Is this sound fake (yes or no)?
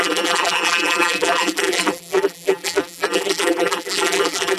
yes